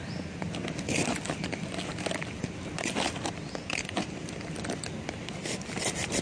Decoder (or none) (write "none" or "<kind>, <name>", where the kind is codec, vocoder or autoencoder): none